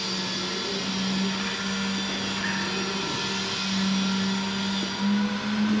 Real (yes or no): yes